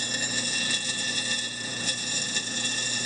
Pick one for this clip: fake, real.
real